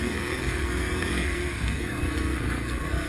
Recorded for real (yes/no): no